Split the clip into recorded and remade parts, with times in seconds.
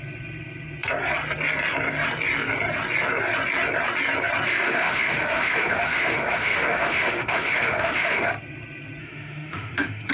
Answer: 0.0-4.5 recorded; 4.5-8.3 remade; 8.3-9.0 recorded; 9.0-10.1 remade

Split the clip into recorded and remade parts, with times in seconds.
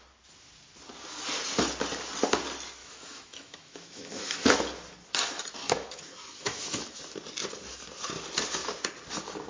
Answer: 0.0-2.8 recorded; 2.8-4.6 remade; 4.6-5.6 recorded; 5.6-7.0 remade; 7.0-9.5 recorded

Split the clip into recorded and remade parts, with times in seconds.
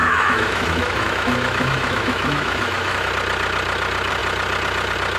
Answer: 0.0-3.1 remade; 3.1-5.2 recorded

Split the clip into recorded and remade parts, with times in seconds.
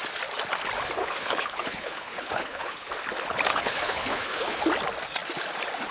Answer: 0.0-1.0 recorded; 1.0-2.9 remade; 2.9-3.5 recorded; 3.5-4.6 remade; 4.6-5.9 recorded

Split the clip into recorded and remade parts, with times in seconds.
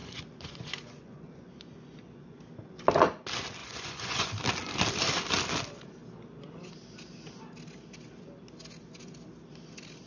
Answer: 0.0-2.4 remade; 2.4-3.6 recorded; 3.6-4.3 remade; 4.3-10.1 recorded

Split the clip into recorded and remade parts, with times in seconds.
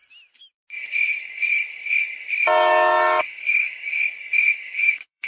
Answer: 0.0-3.2 recorded; 3.2-4.0 remade; 4.0-4.6 recorded; 4.6-5.3 remade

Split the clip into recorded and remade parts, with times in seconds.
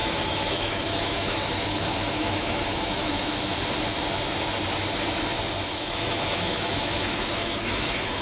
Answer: 0.0-3.3 remade; 3.3-5.7 recorded; 5.7-8.2 remade